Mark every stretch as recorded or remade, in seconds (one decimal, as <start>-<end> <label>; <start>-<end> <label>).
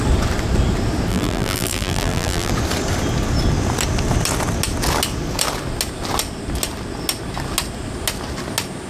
0.0-1.1 recorded; 1.1-2.5 remade; 2.5-8.9 recorded